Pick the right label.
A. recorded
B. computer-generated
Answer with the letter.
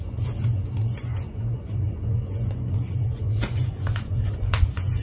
B